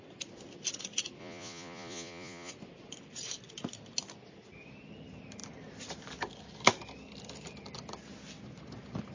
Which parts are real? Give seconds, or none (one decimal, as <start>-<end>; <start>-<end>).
0.0-1.2; 2.5-9.1

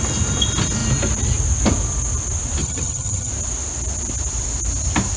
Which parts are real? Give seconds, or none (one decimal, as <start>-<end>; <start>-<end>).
0.0-2.6; 3.3-5.2